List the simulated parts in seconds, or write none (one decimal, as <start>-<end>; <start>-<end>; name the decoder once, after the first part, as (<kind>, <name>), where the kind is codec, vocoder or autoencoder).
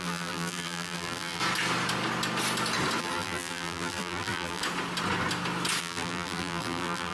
0.0-1.4 (vocoder, BigVGAN v2); 3.0-4.6; 5.8-7.1